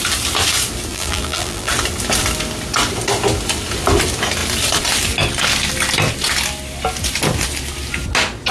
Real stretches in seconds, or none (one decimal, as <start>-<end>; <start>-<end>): 0.0-0.9; 1.7-8.5